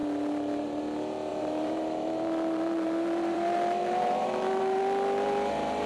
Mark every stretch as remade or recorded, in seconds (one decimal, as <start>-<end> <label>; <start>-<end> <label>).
0.0-0.8 remade; 0.8-1.3 recorded; 1.3-4.8 remade; 4.8-5.9 recorded